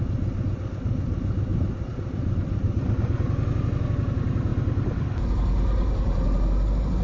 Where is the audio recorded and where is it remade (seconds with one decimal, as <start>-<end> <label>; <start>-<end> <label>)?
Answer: 0.0-1.5 recorded; 1.5-2.9 remade; 2.9-7.0 recorded